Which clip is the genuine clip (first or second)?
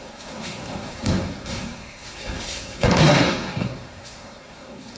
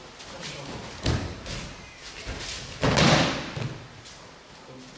second